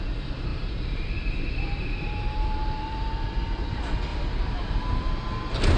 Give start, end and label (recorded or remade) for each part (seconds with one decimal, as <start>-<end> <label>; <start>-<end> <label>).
0.0-0.5 recorded; 0.5-3.1 remade; 3.1-4.1 recorded; 4.1-5.1 remade; 5.1-5.8 recorded